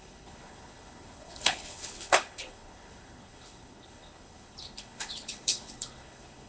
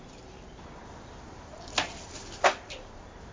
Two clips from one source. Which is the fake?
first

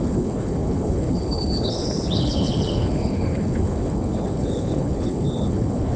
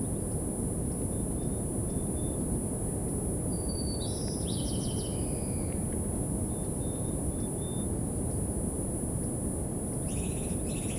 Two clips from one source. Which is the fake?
first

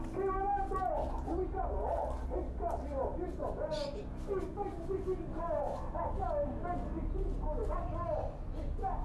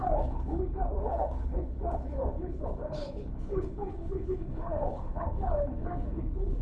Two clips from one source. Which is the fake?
second